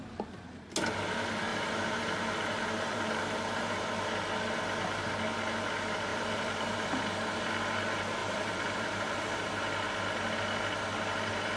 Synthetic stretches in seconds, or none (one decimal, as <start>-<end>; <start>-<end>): 1.5-4.1; 6.1-7.0; 8.2-9.5

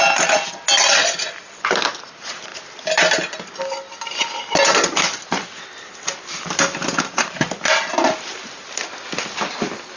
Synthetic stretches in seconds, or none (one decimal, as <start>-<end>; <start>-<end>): none

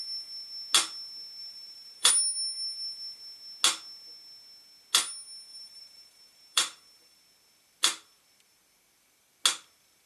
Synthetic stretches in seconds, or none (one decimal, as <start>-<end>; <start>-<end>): 1.4-2.1; 5.5-7.2

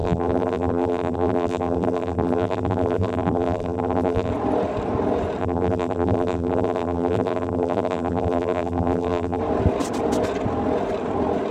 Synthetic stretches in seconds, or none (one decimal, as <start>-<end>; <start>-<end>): 0.0-4.3; 5.4-9.4

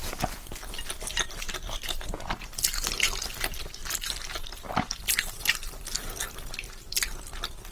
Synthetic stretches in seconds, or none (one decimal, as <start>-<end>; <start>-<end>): 0.0-0.7; 3.8-4.7

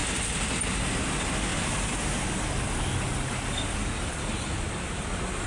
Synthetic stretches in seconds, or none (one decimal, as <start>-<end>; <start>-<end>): 0.0-0.7

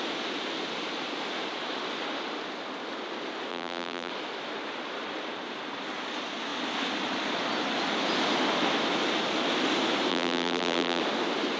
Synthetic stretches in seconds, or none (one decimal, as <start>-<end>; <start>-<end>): 3.5-4.1; 10.1-11.0

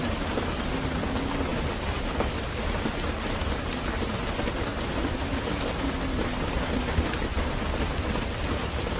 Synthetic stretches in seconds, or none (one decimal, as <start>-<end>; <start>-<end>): none